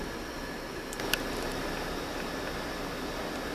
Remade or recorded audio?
recorded